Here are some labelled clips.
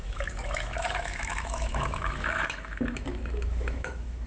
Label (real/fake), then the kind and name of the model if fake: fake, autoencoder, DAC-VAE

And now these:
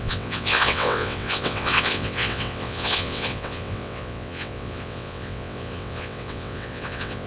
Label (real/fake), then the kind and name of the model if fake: fake, vocoder, WaveNeXt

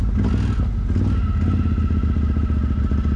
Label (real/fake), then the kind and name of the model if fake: real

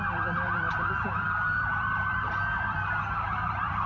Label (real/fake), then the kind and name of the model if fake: fake, vocoder, BigVGAN v2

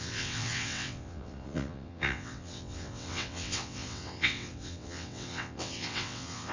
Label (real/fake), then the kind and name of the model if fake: fake, vocoder, WaveNeXt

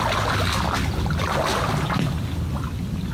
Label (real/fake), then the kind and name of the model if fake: real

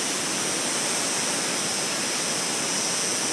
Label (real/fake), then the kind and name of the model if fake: real